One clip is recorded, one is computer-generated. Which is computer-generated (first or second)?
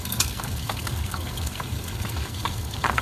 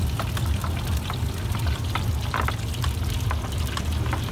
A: first